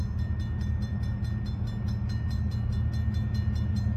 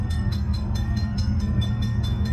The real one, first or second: first